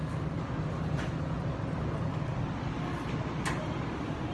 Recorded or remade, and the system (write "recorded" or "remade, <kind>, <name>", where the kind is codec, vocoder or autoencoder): recorded